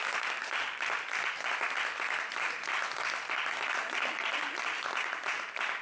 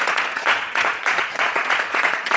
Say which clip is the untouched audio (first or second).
first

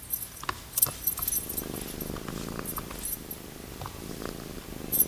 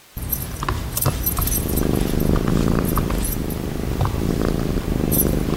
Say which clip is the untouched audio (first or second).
first